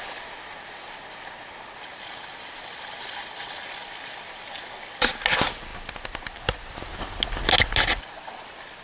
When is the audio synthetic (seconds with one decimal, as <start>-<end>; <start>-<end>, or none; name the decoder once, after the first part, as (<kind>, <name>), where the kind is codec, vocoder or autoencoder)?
none